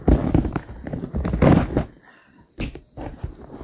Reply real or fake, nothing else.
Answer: real